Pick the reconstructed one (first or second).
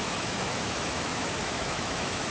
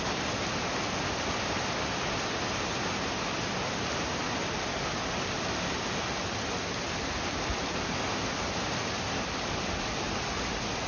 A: first